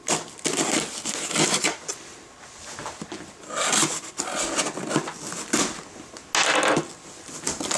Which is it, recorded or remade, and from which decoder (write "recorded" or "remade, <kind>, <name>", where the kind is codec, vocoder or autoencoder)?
recorded